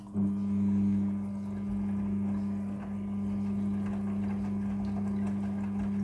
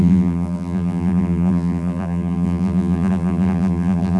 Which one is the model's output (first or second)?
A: second